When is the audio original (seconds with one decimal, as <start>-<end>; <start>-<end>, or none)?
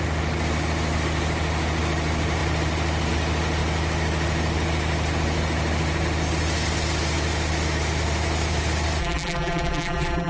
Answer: 0.0-9.0